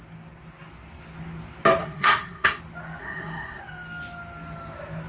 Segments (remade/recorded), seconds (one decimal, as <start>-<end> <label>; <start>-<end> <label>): 0.0-1.8 recorded; 1.8-2.6 remade; 2.6-3.0 recorded; 3.0-3.6 remade; 3.6-5.1 recorded